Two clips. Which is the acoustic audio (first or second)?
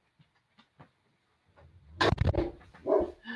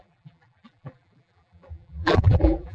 first